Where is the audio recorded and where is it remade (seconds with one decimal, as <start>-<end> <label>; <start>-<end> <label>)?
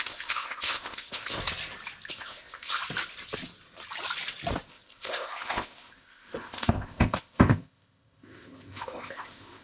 0.0-1.4 remade; 1.4-2.1 recorded; 2.1-2.8 remade; 2.8-4.7 recorded; 4.7-9.6 remade